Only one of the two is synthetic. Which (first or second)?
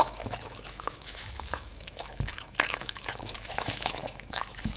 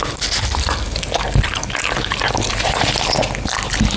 first